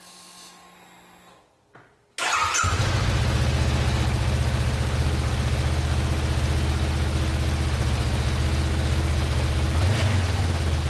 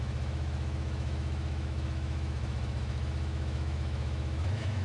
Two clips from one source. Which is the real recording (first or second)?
first